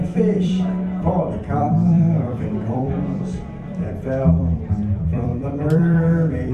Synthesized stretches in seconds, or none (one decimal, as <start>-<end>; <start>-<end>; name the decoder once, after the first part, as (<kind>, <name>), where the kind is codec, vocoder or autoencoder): 0.0-6.5 (vocoder, BigVGAN v2)